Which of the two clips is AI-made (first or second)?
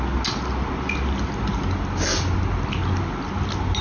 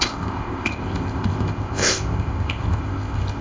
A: second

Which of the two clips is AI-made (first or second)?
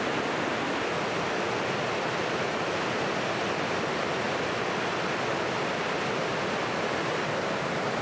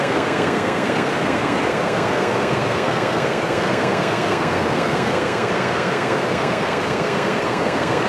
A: second